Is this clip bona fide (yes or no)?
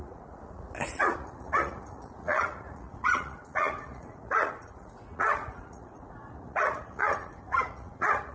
no